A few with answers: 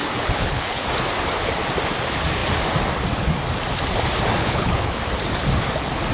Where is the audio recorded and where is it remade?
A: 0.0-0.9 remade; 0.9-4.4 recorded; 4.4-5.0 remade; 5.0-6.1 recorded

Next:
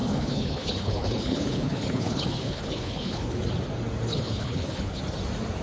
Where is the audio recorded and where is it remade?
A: 0.0-3.4 remade; 3.4-4.1 recorded; 4.1-5.0 remade; 5.0-5.6 recorded

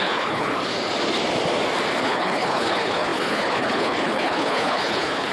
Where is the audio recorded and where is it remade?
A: 0.0-0.5 remade; 0.5-2.0 recorded; 2.0-5.3 remade

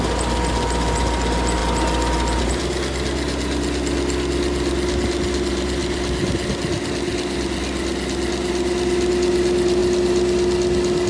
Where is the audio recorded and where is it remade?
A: 0.0-11.1 recorded

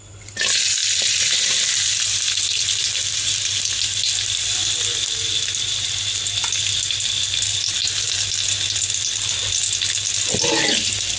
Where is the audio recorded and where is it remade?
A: 0.0-11.2 recorded

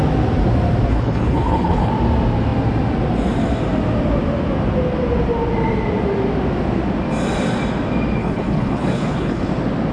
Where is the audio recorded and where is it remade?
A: 0.0-0.9 recorded; 0.9-1.9 remade; 1.9-8.2 recorded; 8.2-9.5 remade; 9.5-9.9 recorded

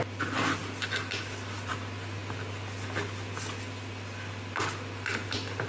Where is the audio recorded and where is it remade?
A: 0.0-5.7 recorded